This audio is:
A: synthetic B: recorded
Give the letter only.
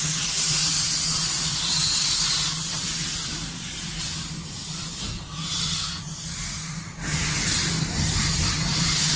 B